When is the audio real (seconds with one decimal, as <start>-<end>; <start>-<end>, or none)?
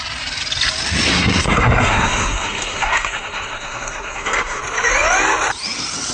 0.0-1.1; 4.6-6.1